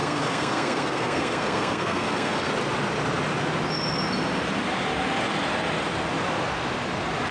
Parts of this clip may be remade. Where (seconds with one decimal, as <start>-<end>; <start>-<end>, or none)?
0.0-2.5